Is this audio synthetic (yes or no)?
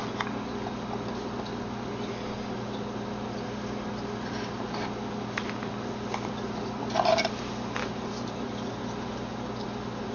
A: no